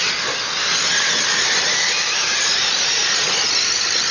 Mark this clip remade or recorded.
recorded